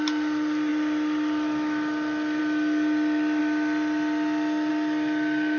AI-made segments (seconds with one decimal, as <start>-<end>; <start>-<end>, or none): none